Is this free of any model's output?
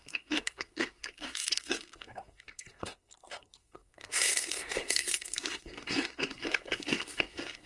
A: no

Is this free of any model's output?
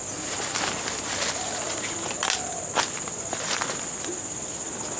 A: yes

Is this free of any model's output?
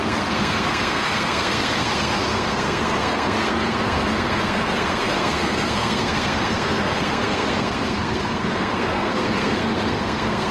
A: no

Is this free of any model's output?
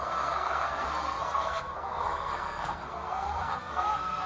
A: no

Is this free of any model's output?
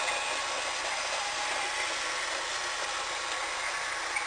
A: yes